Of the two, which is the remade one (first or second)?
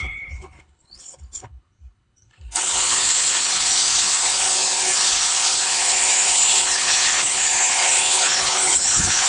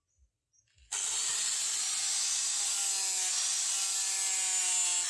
first